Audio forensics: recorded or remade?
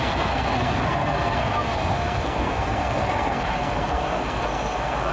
remade